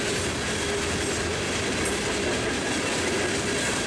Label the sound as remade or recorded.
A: recorded